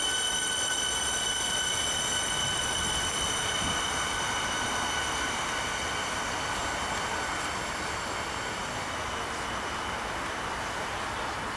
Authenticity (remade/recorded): recorded